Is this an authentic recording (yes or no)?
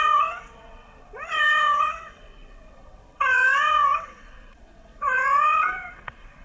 no